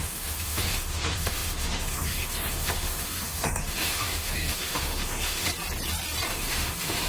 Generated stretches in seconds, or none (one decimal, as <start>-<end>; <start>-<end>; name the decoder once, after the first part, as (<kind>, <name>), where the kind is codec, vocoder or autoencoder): 0.0-5.5 (autoencoder, DAC-VAE); 6.3-7.1